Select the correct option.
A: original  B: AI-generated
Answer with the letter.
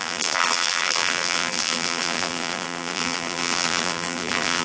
B